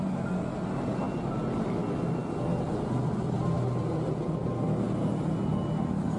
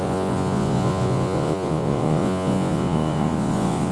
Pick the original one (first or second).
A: first